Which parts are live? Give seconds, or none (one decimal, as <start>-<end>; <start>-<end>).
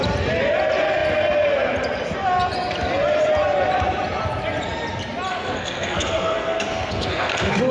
0.0-5.3